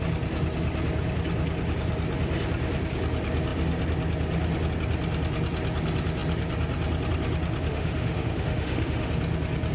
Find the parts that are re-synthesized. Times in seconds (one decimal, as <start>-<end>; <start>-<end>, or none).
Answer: 7.7-9.1